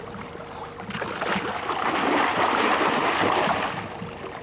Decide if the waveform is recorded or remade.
recorded